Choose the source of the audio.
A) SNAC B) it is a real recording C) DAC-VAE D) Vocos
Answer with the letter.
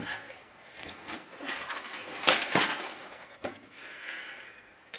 A